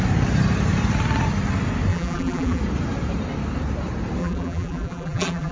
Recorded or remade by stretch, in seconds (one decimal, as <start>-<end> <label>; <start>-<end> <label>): 0.0-1.9 recorded; 1.9-2.6 remade; 2.6-4.2 recorded; 4.2-5.5 remade